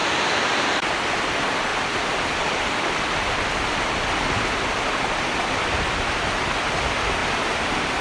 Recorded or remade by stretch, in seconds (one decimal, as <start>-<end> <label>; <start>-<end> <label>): 0.0-0.8 remade; 0.8-1.7 recorded; 1.7-4.7 remade; 4.7-8.0 recorded